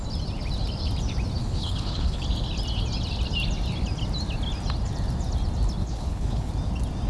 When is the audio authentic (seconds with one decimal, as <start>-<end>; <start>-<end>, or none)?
0.0-1.4; 2.2-5.8; 6.5-7.1